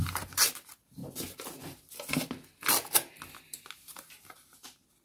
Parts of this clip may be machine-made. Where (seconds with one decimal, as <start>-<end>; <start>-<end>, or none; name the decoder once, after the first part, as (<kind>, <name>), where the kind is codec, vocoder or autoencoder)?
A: none